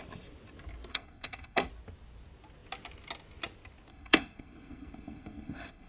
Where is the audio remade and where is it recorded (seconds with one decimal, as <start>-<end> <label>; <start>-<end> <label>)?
0.0-0.9 recorded; 0.9-1.7 remade; 1.7-3.9 recorded; 3.9-5.9 remade